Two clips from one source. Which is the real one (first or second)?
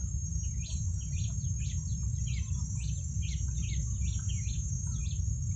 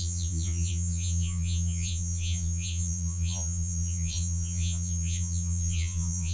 first